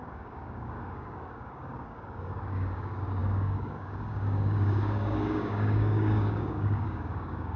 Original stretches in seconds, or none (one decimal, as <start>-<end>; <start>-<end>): none